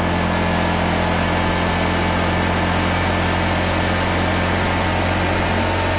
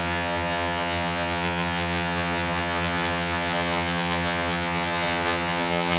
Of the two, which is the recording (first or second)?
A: first